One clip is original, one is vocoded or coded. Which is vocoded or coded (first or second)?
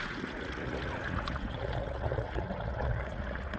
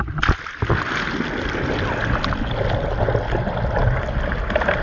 first